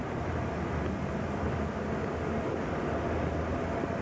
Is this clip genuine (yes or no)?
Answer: yes